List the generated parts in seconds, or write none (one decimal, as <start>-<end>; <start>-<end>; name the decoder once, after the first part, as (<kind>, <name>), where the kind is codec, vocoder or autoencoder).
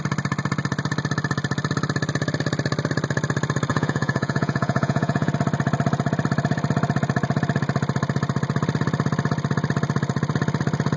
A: 3.7-5.3 (vocoder, Vocos)